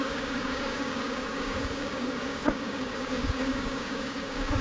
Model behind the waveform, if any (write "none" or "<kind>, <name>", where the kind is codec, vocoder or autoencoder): codec, DAC